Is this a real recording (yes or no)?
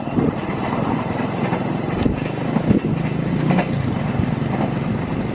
yes